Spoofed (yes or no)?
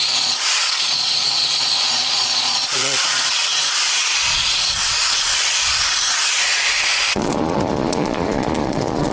yes